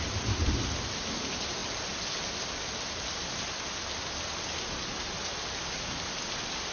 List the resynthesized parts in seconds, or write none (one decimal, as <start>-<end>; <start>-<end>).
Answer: none